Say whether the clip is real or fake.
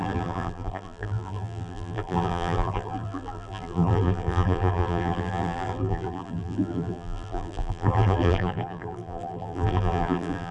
fake